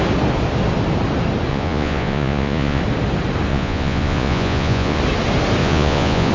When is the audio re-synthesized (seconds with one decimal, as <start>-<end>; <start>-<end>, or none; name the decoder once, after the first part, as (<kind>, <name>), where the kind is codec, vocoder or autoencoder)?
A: 1.5-2.8 (vocoder, Vocos); 3.5-5.0; 5.6-6.3